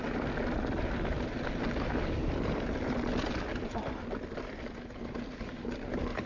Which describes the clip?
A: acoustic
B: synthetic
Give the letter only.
A